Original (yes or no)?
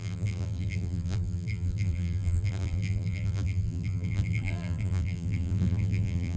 no